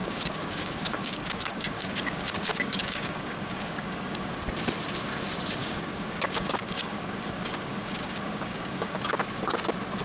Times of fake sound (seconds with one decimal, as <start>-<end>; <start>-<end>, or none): 0.0-4.4; 5.6-9.0

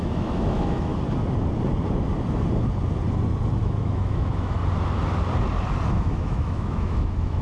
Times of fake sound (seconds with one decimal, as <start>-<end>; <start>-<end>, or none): 0.0-0.9; 3.6-4.6; 5.9-7.4

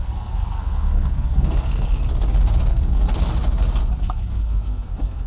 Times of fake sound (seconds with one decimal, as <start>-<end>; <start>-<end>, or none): 0.0-2.0; 2.7-3.3; 4.0-5.3

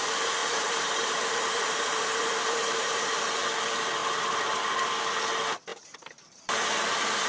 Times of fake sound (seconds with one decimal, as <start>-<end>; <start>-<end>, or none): 0.4-3.2; 4.0-4.9; 5.7-7.3